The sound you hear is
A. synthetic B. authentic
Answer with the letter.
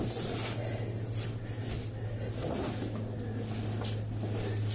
B